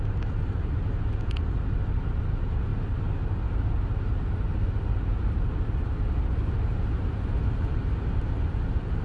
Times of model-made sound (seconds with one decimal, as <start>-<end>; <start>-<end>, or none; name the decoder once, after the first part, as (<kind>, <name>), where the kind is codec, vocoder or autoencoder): none

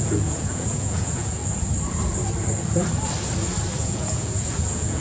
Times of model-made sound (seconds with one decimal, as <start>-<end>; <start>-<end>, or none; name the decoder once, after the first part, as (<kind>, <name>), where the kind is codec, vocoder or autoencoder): 0.0-1.4 (vocoder, Vocos); 3.8-5.0

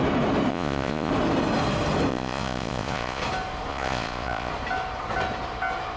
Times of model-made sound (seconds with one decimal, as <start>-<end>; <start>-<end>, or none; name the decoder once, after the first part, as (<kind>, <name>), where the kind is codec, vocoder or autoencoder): 0.5-1.1 (vocoder, Vocos); 2.1-3.2; 3.7-4.5

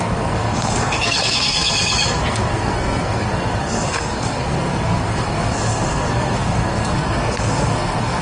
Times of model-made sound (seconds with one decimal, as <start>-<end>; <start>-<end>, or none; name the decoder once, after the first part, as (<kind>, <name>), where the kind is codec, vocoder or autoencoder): 0.0-8.2 (codec, SNAC)

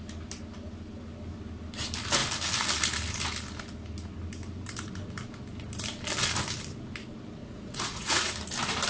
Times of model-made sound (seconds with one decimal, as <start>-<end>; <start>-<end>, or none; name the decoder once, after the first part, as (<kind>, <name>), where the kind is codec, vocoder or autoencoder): 7.4-8.3 (vocoder, Vocos)